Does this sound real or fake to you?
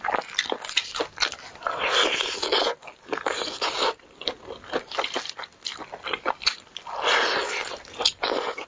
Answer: real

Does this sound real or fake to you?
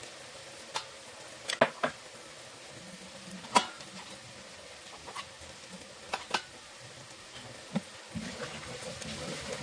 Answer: real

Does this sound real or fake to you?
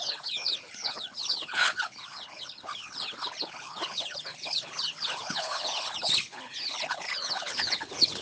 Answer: fake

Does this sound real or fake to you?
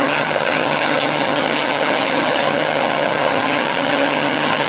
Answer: fake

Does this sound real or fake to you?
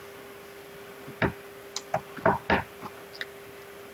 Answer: real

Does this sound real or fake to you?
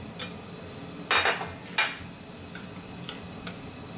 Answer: real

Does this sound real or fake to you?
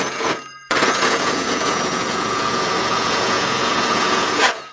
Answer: fake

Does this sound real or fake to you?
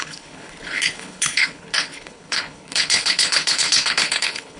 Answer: fake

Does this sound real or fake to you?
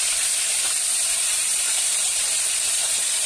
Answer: fake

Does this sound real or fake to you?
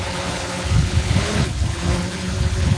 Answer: fake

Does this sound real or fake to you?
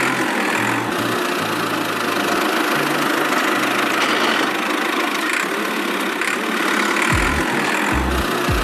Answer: real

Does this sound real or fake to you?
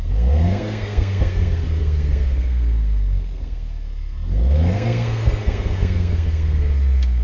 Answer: fake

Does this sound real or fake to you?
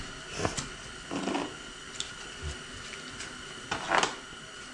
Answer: real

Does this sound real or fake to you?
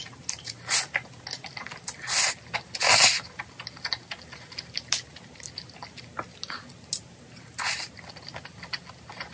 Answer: real